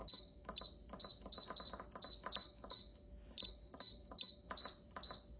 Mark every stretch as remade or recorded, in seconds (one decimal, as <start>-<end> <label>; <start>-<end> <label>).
0.0-0.6 remade; 0.6-2.4 recorded; 2.4-4.5 remade; 4.5-5.4 recorded